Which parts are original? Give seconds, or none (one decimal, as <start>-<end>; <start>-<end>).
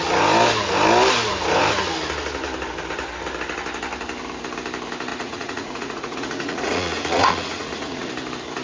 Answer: 0.0-5.1; 8.1-8.6